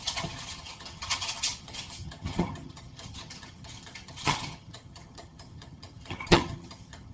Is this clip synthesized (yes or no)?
yes